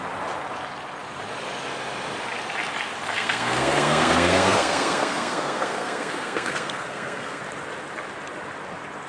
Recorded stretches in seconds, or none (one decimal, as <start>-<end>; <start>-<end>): 0.0-3.1; 7.4-9.1